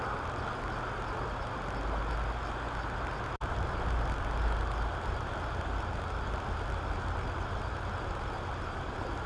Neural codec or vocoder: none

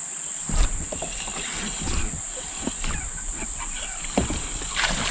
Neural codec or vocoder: none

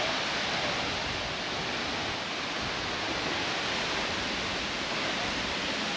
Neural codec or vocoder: none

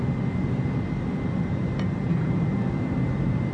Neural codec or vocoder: vocoder, BigVGAN v2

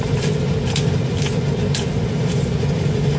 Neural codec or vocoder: vocoder, BigVGAN v2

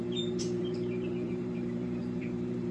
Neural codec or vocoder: vocoder, BigVGAN v2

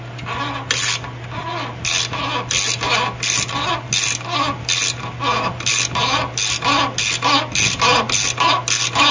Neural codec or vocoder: none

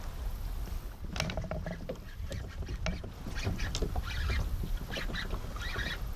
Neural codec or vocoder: none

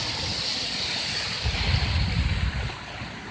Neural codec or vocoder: none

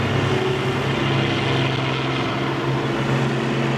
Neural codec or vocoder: none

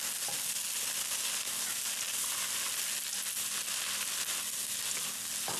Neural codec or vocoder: none